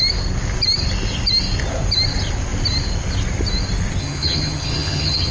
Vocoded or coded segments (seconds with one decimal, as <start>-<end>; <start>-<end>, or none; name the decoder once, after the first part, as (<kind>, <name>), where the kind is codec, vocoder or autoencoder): 4.0-5.3 (vocoder, HiFi-GAN)